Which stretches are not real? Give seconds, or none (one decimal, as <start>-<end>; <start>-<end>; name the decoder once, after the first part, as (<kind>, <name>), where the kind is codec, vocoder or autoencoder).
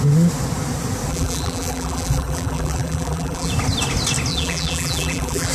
1.1-3.5 (vocoder, BigVGAN v2); 4.3-5.5